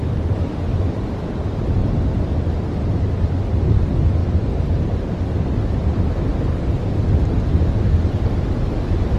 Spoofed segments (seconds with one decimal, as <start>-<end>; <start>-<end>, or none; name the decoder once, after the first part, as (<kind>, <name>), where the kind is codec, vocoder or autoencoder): none